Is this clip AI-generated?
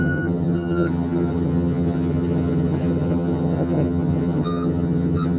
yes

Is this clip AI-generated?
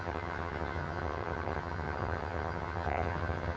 yes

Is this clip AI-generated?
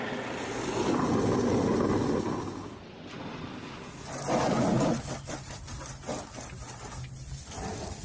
no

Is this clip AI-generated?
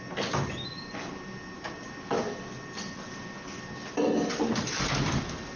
no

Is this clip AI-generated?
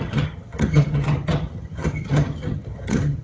yes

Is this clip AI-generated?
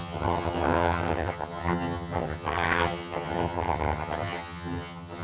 yes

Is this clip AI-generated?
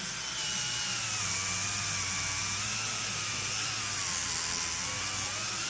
no